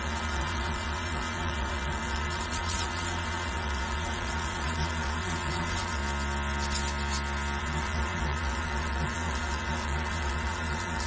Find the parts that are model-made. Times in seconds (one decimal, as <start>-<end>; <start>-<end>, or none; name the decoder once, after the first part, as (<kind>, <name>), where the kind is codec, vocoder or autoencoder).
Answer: 0.0-6.0 (vocoder, Vocos); 7.6-11.1

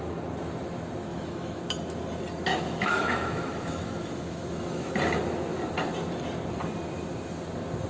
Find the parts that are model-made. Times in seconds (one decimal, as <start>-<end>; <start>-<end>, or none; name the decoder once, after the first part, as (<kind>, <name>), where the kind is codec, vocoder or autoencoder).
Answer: 1.1-1.6 (autoencoder, DAC-VAE); 2.5-4.9

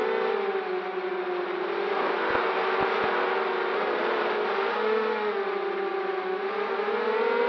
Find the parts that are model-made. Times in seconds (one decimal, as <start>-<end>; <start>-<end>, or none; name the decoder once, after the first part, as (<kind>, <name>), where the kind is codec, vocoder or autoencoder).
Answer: none

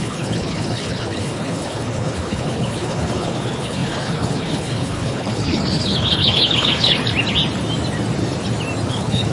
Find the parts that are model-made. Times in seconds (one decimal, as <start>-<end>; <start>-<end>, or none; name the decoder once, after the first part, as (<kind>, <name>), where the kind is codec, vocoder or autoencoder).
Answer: 0.0-7.0 (codec, HILCodec); 8.9-9.3